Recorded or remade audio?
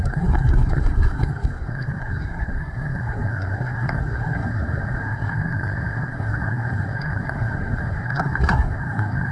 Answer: remade